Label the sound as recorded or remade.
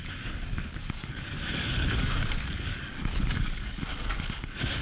remade